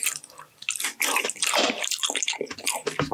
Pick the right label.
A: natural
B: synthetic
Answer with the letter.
A